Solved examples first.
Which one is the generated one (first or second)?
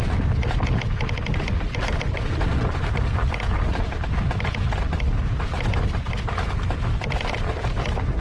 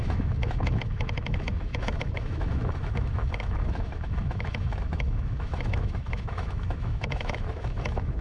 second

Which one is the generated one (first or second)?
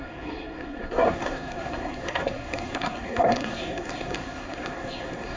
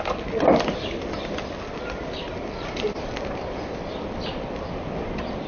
first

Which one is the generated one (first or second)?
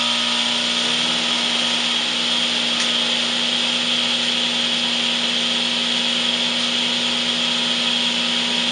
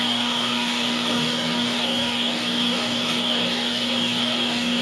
second